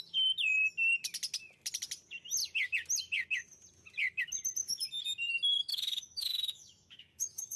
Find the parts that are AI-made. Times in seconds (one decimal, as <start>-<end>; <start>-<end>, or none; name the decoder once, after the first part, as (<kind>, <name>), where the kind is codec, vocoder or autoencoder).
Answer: 5.7-7.6 (autoencoder, DAC-VAE)